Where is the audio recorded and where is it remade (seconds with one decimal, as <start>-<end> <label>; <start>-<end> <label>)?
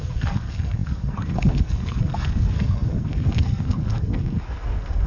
0.0-5.1 remade